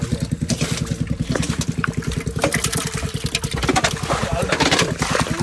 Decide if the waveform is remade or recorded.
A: recorded